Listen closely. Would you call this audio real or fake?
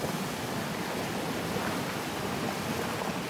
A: real